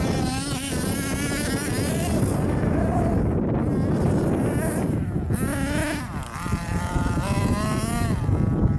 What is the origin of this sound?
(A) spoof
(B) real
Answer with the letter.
B